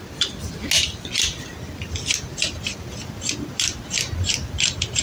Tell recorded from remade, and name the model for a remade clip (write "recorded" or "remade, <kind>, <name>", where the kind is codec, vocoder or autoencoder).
recorded